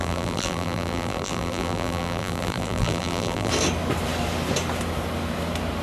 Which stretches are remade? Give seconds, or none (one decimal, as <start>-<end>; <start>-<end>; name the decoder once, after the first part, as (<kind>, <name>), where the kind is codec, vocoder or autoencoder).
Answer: 0.0-3.5 (vocoder, BigVGAN v2)